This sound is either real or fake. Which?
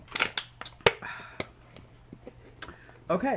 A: real